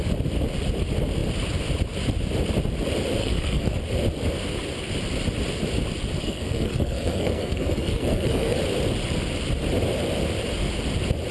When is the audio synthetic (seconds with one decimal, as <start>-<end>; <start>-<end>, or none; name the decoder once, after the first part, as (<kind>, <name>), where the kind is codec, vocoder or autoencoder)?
3.2-3.8 (codec, SNAC); 6.2-8.6